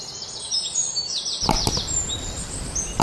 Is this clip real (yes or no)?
yes